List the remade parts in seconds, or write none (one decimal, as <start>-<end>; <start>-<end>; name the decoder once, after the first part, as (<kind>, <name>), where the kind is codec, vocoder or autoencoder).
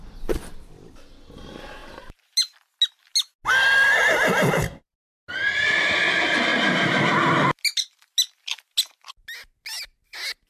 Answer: none